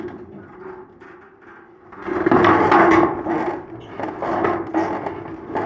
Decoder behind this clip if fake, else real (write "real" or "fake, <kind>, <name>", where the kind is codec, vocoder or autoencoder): fake, vocoder, BigVGAN v2